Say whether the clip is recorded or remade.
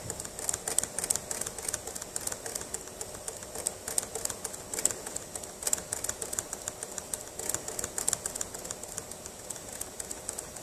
recorded